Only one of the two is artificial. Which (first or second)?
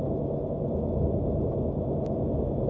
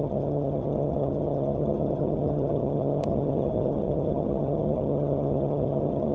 second